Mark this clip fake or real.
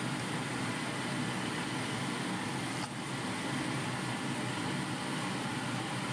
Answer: real